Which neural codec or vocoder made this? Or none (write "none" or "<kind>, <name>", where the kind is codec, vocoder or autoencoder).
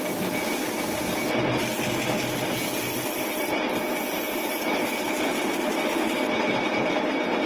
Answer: none